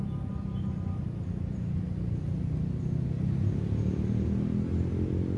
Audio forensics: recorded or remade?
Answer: recorded